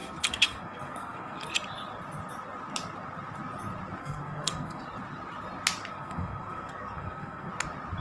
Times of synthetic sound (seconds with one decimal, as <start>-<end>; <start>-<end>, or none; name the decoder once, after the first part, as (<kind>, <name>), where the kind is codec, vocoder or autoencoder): 0.0-1.5 (codec, SNAC); 4.0-4.8; 5.9-7.5